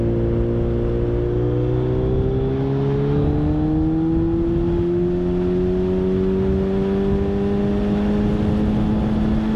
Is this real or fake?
real